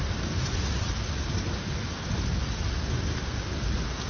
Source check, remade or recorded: recorded